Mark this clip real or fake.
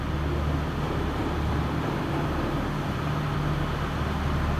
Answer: real